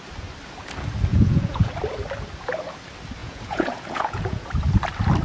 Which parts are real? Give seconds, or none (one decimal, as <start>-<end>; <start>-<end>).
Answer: 0.0-1.1; 1.7-3.2; 4.5-5.2